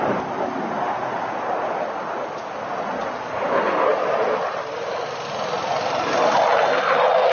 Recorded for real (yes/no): yes